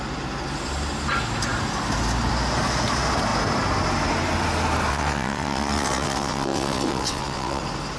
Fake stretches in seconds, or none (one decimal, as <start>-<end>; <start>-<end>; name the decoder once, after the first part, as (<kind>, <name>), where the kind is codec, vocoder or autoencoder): 4.9-7.6 (vocoder, WaveNeXt)